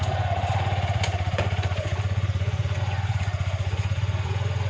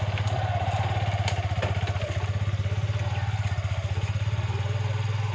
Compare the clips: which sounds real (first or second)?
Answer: second